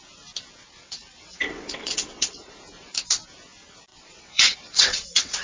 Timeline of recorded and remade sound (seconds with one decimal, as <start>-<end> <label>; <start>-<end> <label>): 0.0-0.8 recorded; 0.8-2.5 remade; 2.5-3.9 recorded; 3.9-5.4 remade